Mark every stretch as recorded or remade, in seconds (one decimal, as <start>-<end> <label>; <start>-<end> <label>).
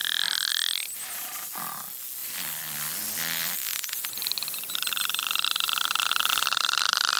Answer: 0.0-2.2 recorded; 2.2-6.5 remade; 6.5-7.2 recorded